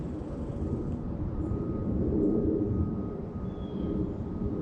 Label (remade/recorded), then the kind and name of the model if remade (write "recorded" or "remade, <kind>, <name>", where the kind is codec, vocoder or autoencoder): recorded